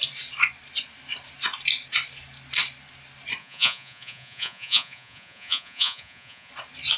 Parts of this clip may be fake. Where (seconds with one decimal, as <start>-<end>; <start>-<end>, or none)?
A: 3.4-6.5